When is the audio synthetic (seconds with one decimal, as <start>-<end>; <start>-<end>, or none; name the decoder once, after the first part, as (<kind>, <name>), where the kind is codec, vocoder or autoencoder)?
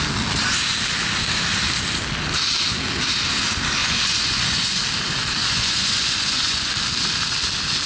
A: 3.8-4.8 (vocoder, Vocos); 5.4-6.7